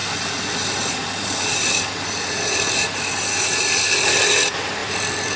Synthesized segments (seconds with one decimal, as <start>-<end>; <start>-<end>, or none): none